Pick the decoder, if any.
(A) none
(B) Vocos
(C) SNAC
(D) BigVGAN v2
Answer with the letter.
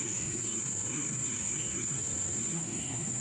C